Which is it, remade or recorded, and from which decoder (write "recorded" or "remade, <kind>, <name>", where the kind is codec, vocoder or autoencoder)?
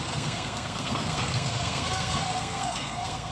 remade, codec, SNAC